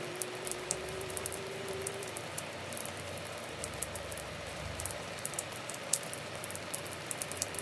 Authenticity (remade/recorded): remade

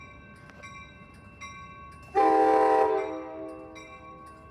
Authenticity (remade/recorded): recorded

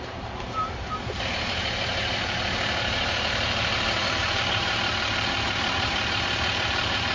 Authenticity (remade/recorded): remade